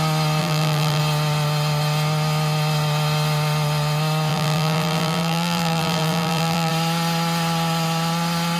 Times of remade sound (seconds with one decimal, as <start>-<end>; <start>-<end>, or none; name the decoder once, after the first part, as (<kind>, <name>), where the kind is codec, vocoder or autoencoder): 0.4-1.0 (vocoder, BigVGAN v2); 4.3-6.7